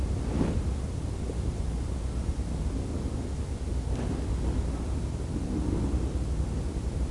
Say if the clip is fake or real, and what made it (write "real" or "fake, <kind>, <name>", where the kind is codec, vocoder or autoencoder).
real